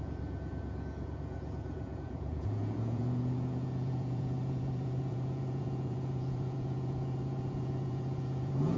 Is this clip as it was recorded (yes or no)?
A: no